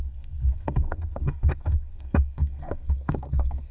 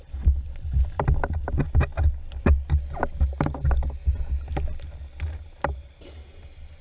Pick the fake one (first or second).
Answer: first